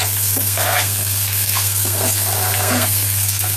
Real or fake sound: fake